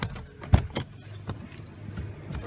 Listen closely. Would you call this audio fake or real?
real